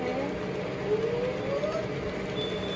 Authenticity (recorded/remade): recorded